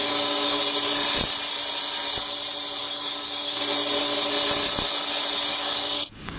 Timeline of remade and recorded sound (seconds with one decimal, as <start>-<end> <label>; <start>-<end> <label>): 0.0-0.6 remade; 0.6-2.8 recorded; 2.8-3.6 remade; 3.6-5.5 recorded; 5.5-6.4 remade